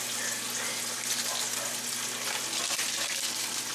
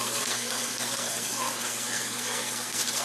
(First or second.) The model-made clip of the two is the second